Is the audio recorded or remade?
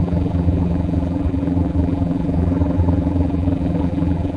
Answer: remade